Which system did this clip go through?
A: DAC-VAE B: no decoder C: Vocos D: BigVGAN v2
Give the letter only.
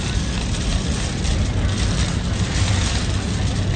B